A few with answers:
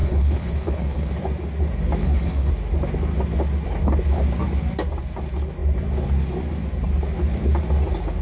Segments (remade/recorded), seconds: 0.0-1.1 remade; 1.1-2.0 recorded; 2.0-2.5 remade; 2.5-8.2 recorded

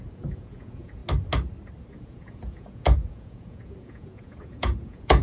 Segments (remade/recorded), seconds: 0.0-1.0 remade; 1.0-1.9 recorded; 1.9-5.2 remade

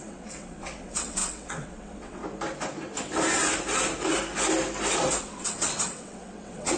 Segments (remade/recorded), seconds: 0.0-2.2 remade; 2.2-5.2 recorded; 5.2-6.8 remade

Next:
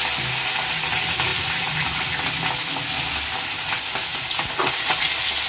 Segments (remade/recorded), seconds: 0.0-1.3 recorded; 1.3-2.0 remade; 2.0-4.1 recorded; 4.1-5.0 remade; 5.0-5.5 recorded

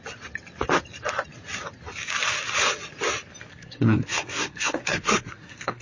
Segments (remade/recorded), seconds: 0.0-3.5 recorded; 3.5-5.8 remade

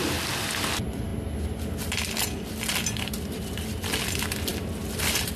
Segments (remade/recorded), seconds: 0.0-1.1 remade; 1.1-2.5 recorded; 2.5-4.5 remade; 4.5-5.0 recorded; 5.0-5.4 remade

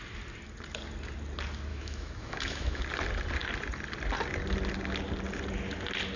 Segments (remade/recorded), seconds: 0.0-1.7 recorded; 1.7-2.8 remade; 2.8-6.2 recorded

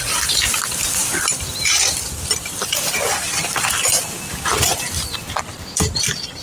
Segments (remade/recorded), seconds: 0.0-1.0 recorded; 1.0-1.6 remade; 1.6-6.4 recorded